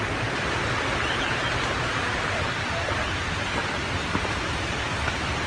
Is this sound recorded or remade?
recorded